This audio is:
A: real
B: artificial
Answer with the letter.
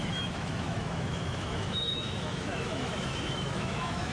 B